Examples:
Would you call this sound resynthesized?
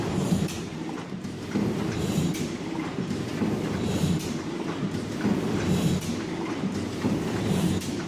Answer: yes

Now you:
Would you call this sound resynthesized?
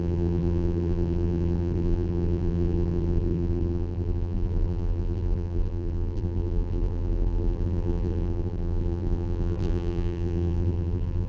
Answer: yes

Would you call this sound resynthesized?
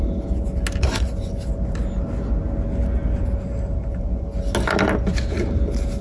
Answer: no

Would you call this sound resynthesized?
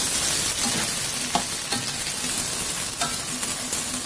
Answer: no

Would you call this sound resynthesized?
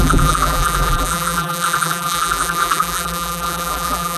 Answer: yes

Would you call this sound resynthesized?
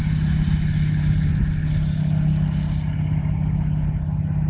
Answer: no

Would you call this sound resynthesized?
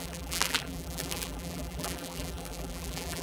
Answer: yes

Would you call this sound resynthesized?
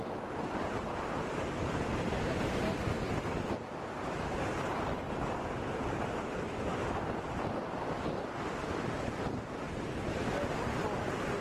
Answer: no